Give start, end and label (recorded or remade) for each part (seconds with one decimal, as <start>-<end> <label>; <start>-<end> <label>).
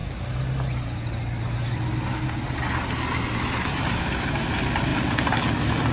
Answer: 0.0-5.9 recorded